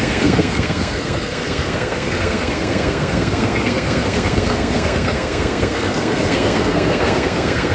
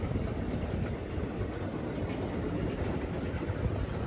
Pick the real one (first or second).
second